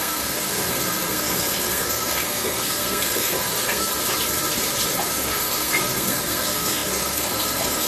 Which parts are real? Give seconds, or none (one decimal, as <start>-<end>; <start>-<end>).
3.9-5.1